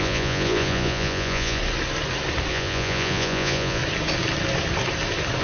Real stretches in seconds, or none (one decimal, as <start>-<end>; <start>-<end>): 1.6-2.5; 3.8-5.4